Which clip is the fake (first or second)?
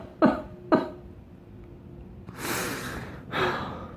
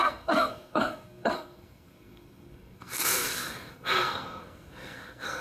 second